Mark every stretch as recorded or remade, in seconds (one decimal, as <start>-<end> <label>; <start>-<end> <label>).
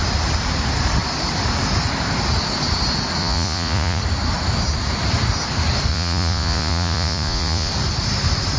0.0-3.2 recorded; 3.2-4.0 remade; 4.0-5.9 recorded; 5.9-7.7 remade; 7.7-8.6 recorded